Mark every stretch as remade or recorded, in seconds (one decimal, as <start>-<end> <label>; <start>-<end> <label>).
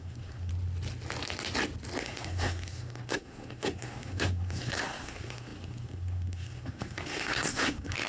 0.0-0.5 remade; 0.5-2.0 recorded; 2.0-8.1 remade